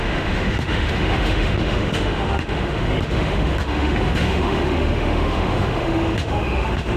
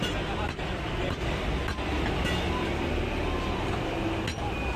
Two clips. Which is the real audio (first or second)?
second